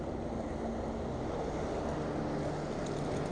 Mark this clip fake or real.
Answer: real